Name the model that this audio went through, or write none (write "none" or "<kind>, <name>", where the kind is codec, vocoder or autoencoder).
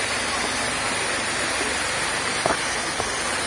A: none